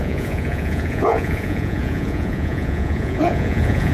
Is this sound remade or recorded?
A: remade